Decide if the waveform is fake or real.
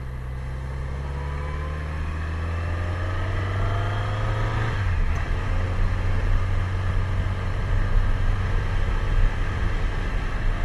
real